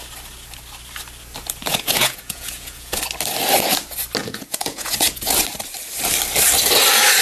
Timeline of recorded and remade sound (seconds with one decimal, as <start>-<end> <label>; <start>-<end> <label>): 0.0-1.6 recorded; 1.6-3.0 remade; 3.0-4.2 recorded; 4.2-5.3 remade; 5.3-7.2 recorded